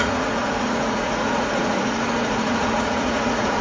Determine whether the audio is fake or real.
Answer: fake